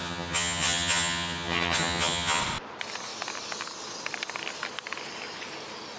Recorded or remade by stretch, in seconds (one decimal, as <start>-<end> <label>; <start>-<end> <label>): 0.0-2.4 remade; 2.4-6.0 recorded